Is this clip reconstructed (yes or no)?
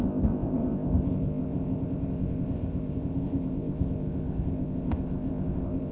yes